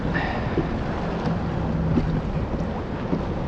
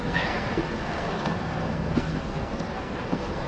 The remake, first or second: second